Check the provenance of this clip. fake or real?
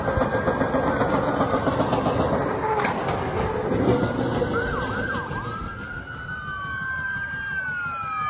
real